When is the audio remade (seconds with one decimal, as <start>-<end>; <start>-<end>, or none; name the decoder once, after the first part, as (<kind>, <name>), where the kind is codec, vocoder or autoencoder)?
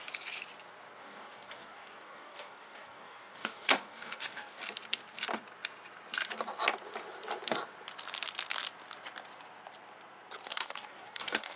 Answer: 1.0-4.6 (codec, DAC); 10.5-11.6